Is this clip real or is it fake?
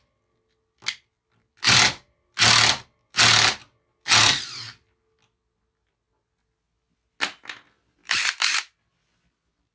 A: real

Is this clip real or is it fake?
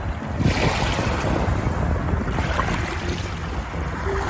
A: real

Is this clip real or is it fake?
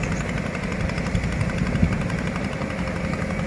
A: real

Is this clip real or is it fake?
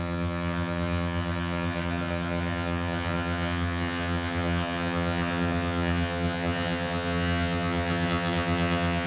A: fake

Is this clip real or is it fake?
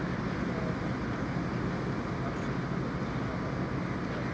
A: real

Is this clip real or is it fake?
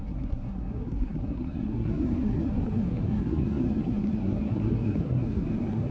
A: fake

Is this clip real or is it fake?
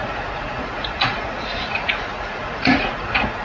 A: fake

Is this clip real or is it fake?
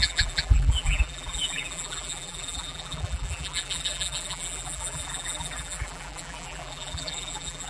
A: fake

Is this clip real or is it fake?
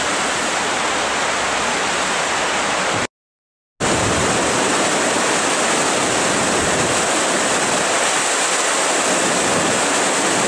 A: real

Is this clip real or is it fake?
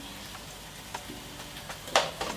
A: real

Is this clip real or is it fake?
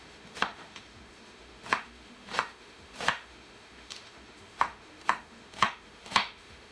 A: fake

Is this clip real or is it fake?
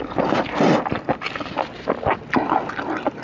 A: real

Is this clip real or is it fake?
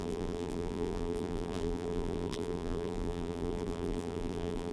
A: fake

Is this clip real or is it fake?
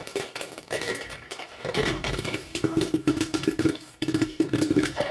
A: fake